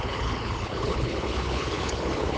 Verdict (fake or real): fake